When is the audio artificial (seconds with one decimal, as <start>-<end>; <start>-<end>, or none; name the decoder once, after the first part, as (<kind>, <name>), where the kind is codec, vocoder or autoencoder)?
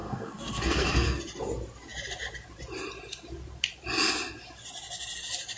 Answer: 0.0-1.2 (codec, SNAC)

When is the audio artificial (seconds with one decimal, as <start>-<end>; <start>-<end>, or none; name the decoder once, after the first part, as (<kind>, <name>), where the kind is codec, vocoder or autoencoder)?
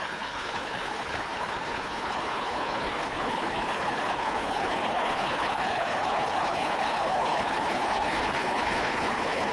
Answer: 0.0-9.5 (codec, HILCodec)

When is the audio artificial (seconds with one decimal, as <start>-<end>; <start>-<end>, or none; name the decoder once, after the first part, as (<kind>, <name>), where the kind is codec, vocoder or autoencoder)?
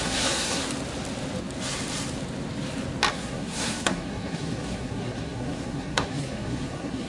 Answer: 0.0-0.6 (codec, SNAC); 3.1-7.1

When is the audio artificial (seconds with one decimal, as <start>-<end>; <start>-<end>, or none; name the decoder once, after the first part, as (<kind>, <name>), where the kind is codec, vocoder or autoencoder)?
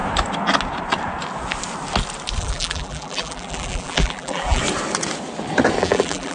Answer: 2.4-4.6 (vocoder, BigVGAN v2); 5.8-6.3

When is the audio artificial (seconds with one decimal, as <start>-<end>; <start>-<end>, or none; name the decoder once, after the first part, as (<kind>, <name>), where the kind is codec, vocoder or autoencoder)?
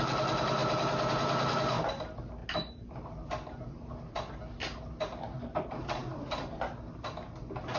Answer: none